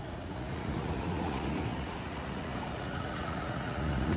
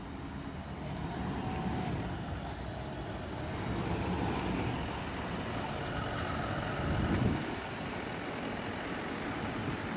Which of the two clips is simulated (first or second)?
first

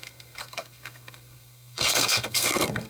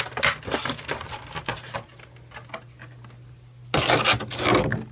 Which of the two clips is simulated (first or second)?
first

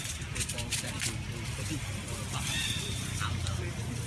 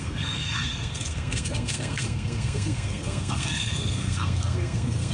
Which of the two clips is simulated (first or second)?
second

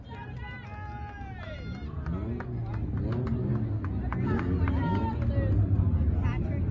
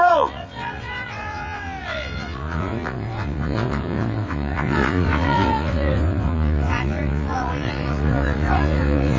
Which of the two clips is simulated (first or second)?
second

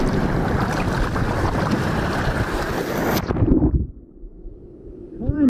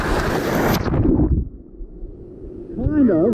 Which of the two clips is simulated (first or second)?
first